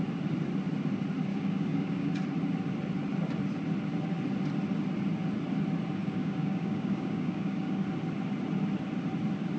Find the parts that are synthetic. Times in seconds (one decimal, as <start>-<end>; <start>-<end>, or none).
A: 1.3-2.1; 6.0-7.8